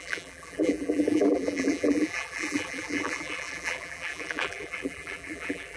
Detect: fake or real fake